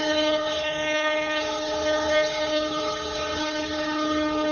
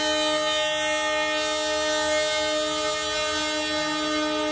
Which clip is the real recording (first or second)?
second